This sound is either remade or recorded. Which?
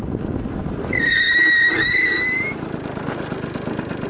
recorded